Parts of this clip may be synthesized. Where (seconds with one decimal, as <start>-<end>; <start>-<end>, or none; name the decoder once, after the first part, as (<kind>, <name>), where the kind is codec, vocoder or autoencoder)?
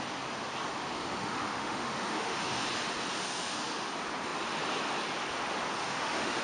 1.0-2.6 (autoencoder, DAC-VAE); 3.1-3.9; 5.8-6.4